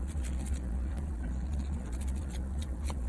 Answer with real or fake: fake